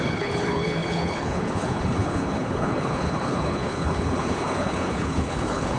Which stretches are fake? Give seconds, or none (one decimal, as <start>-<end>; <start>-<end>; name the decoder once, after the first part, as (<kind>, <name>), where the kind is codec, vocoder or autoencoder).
0.0-5.8 (codec, HILCodec)